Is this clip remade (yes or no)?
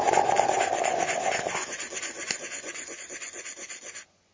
yes